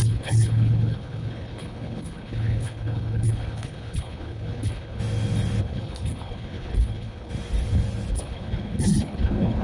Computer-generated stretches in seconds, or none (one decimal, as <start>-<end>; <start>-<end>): 0.0-5.0; 5.6-7.3; 8.1-9.6